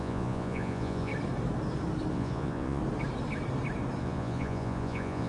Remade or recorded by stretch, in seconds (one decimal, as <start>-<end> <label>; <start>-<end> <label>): 0.0-1.1 remade; 1.1-2.1 recorded; 2.1-2.8 remade; 2.8-4.0 recorded; 4.0-5.3 remade